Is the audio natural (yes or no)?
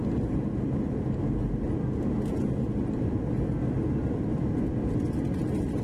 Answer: yes